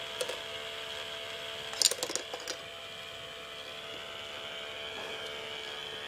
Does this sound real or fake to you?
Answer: real